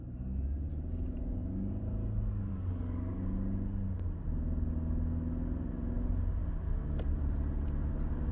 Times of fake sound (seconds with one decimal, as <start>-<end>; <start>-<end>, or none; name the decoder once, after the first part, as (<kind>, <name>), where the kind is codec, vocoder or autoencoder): none